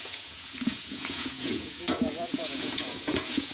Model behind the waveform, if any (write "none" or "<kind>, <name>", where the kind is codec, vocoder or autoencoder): vocoder, Vocos